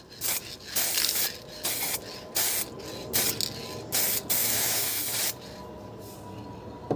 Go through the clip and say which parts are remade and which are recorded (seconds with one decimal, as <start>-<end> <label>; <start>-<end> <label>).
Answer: 0.0-4.4 recorded; 4.4-5.0 remade; 5.0-7.0 recorded